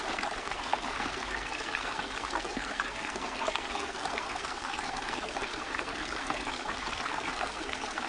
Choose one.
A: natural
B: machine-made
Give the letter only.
B